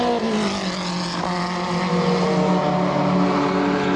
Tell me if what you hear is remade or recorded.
recorded